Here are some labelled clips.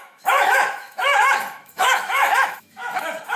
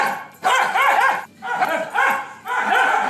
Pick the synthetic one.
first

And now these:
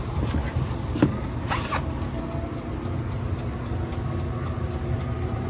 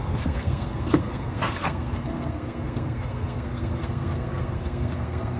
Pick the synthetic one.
second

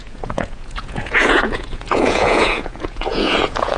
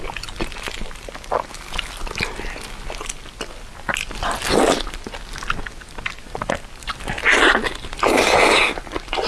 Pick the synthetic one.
first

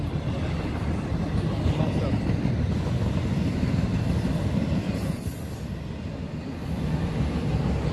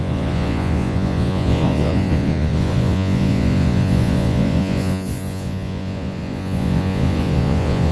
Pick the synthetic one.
second